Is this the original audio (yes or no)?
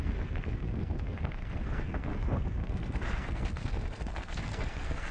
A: no